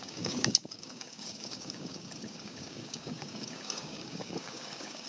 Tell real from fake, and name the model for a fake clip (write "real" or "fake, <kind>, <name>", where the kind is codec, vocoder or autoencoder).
fake, codec, DAC